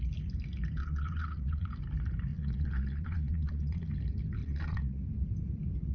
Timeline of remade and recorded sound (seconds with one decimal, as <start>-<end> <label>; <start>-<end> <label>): 0.0-0.8 recorded; 0.8-1.7 remade; 1.7-2.3 recorded; 2.3-3.9 remade; 3.9-4.4 recorded; 4.4-5.0 remade; 5.0-5.9 recorded